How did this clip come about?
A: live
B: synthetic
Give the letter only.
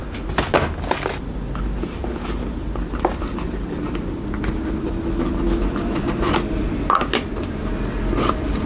A